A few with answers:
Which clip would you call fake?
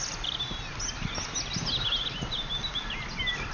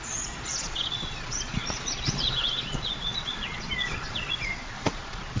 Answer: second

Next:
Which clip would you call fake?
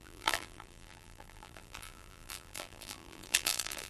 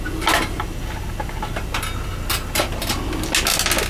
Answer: first